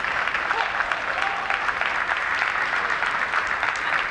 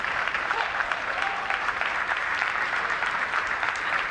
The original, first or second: first